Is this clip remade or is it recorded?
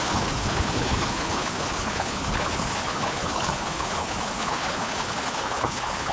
remade